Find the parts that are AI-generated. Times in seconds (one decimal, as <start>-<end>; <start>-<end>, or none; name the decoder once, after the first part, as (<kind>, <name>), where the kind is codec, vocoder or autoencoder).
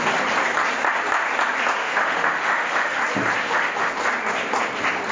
1.8-3.0 (autoencoder, DAC-VAE); 3.4-3.9